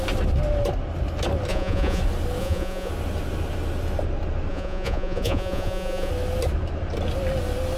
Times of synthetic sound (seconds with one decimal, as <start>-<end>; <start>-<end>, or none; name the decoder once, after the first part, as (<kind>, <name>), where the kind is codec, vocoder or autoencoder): 1.5-2.0 (vocoder, Vocos); 2.4-2.9; 4.5-6.1